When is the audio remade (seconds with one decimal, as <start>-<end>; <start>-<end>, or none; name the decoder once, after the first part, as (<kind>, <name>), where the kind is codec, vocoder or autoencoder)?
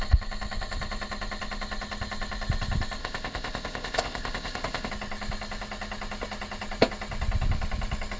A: 3.0-4.9 (codec, ZipCodec)